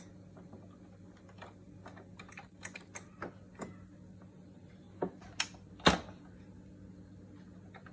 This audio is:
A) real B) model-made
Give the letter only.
A